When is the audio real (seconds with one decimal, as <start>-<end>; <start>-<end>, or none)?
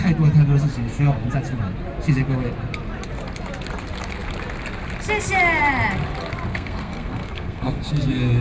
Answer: 0.0-0.7; 1.3-6.5; 7.9-8.4